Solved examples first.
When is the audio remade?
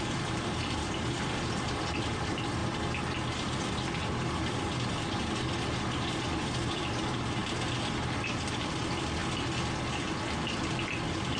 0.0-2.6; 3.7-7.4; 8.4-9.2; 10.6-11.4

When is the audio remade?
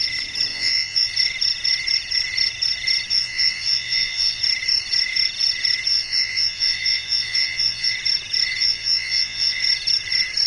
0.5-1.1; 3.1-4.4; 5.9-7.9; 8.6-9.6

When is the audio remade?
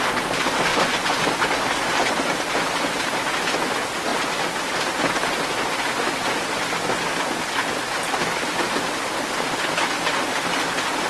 0.7-1.3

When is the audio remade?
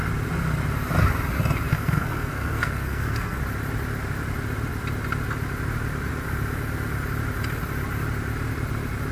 1.7-3.4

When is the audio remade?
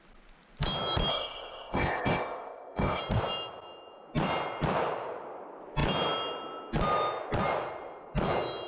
1.1-3.0